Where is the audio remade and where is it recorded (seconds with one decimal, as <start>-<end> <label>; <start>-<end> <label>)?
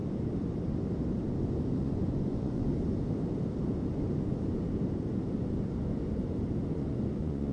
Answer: 0.0-1.8 recorded; 1.8-2.7 remade; 2.7-6.7 recorded; 6.7-7.5 remade